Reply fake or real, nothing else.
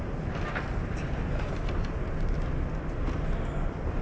real